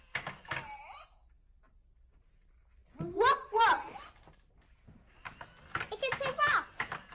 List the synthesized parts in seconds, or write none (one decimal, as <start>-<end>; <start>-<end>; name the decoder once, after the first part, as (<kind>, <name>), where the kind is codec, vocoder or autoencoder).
none